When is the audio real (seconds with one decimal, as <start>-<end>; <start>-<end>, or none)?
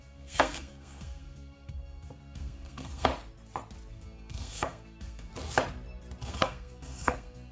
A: 3.1-3.9; 5.3-6.2